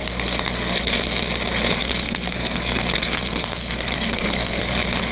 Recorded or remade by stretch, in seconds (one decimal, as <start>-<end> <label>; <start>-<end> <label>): 0.0-0.9 remade; 0.9-1.8 recorded; 1.8-4.6 remade; 4.6-5.1 recorded